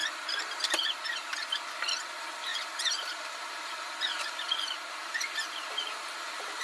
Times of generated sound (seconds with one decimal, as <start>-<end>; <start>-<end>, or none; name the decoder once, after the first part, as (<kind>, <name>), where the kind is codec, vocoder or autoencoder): 0.0-1.5 (vocoder, BigVGAN v2); 2.5-6.6